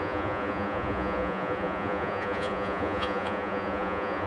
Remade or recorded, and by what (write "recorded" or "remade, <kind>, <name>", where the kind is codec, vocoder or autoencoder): remade, vocoder, Vocos